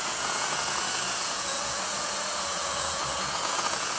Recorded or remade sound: remade